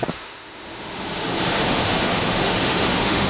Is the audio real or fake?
fake